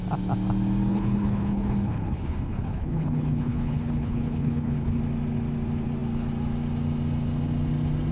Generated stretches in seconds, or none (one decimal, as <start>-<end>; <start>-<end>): 0.9-5.0